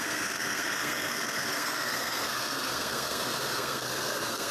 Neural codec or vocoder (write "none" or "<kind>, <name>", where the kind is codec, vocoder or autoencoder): codec, SNAC